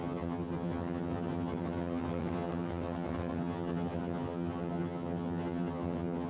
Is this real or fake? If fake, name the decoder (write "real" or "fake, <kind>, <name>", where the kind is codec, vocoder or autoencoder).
fake, vocoder, HiFi-GAN